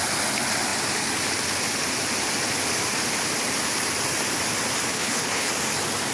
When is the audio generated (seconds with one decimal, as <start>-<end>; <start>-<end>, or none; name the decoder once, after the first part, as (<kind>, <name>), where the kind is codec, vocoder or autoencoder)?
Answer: 4.9-5.5 (codec, HILCodec)